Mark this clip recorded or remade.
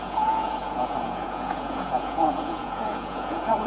remade